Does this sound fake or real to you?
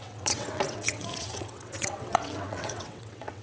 fake